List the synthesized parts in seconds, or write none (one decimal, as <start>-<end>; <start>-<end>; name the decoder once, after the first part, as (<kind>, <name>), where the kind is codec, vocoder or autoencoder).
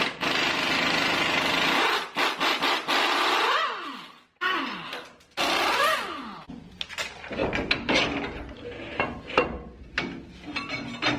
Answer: none